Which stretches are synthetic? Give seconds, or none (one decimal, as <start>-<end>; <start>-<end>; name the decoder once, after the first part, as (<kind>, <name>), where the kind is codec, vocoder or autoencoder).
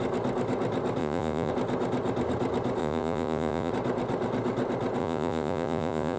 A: 1.0-1.5 (vocoder, Vocos); 2.8-3.7; 5.0-6.2